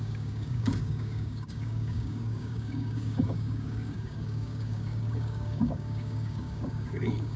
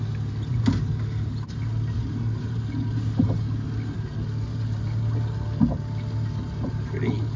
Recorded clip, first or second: second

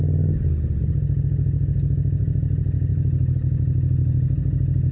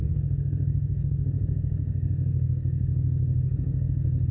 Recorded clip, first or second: first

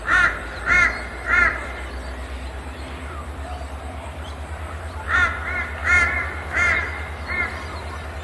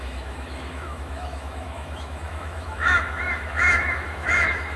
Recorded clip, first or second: first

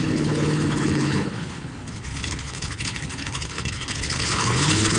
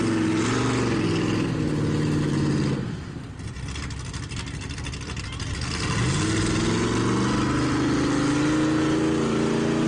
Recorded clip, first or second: second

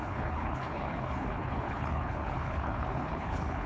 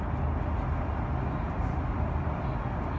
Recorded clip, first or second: second